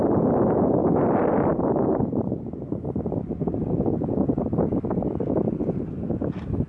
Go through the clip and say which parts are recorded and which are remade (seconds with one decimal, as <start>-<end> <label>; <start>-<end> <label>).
0.0-6.7 recorded